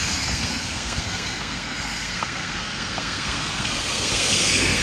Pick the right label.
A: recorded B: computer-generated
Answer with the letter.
B